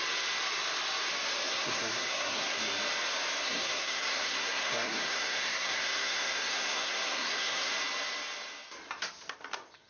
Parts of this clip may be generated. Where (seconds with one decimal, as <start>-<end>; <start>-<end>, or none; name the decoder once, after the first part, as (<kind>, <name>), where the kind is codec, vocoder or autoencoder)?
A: 1.5-2.6 (codec, SNAC); 3.4-7.7